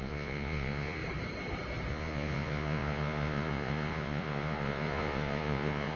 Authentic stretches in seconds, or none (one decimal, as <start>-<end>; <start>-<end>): 1.0-1.9